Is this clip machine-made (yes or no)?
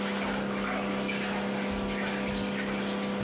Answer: no